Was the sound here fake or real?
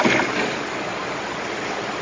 real